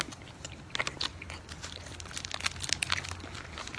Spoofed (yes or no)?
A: no